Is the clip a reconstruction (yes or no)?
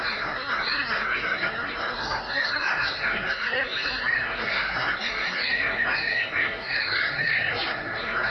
yes